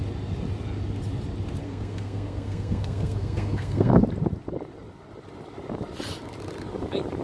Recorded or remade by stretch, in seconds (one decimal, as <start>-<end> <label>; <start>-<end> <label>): 0.0-1.6 recorded; 1.6-4.0 remade; 4.0-7.2 recorded